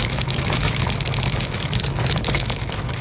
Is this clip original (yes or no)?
no